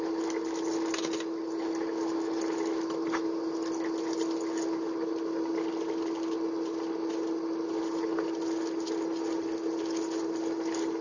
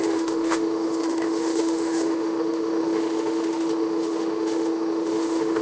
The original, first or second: first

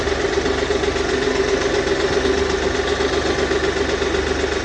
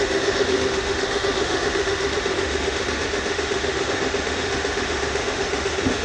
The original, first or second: first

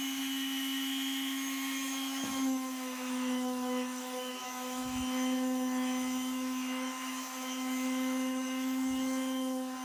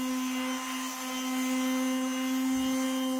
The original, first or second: second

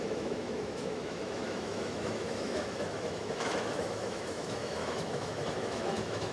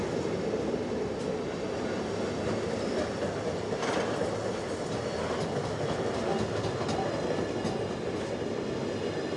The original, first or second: second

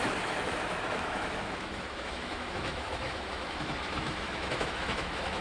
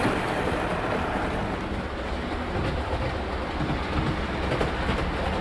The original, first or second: second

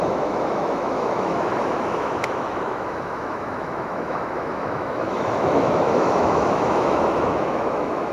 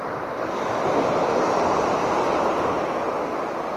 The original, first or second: second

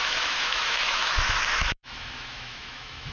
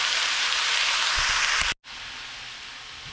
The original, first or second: second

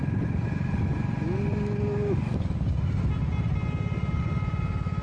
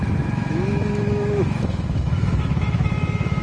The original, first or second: first